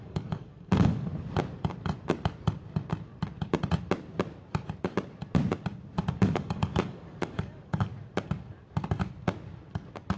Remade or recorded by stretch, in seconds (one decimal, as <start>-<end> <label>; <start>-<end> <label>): 0.0-1.1 remade; 1.1-6.1 recorded; 6.1-7.9 remade; 7.9-10.2 recorded

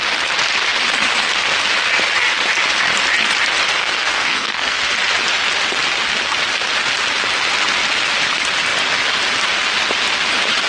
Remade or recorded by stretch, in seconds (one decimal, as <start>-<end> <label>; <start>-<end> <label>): 0.0-3.8 recorded; 3.8-4.8 remade; 4.8-10.7 recorded

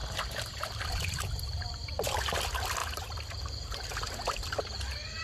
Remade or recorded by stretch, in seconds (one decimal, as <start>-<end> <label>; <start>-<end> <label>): 0.0-2.4 remade; 2.4-2.8 recorded; 2.8-3.4 remade; 3.4-5.2 recorded

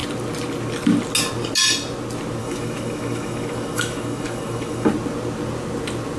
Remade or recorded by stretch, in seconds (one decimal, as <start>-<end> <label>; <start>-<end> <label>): 0.0-2.4 recorded; 2.4-4.9 remade; 4.9-6.2 recorded

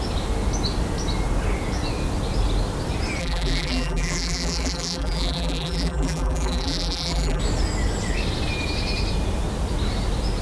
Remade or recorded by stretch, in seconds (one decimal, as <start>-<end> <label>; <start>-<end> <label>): 0.0-3.2 recorded; 3.2-7.4 remade; 7.4-10.4 recorded